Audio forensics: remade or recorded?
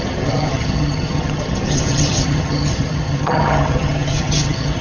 remade